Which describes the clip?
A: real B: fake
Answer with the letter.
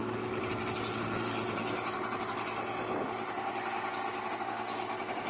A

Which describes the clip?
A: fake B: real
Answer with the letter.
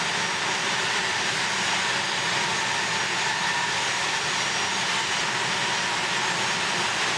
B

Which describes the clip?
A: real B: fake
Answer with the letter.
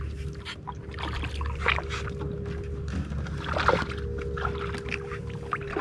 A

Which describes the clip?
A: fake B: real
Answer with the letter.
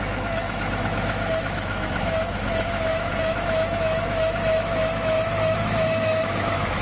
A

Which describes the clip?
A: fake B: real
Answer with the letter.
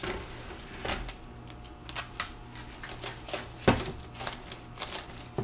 B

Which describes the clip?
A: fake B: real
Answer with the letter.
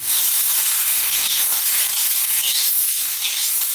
A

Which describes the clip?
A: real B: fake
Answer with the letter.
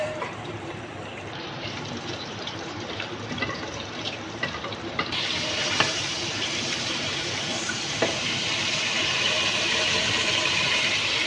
B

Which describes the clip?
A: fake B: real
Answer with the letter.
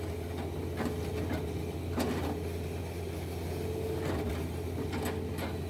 B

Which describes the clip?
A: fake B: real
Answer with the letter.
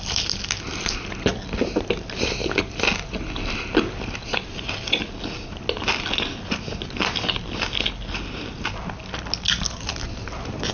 B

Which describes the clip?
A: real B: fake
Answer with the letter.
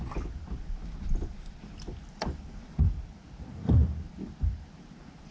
A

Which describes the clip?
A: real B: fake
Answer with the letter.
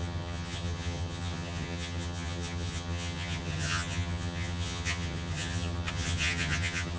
B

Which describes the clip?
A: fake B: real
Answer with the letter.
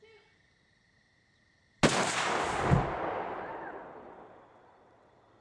B